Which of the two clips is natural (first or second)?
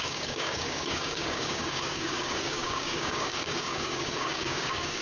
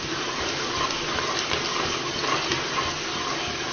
second